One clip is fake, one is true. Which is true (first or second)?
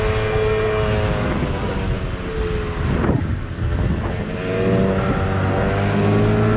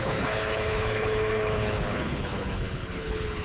first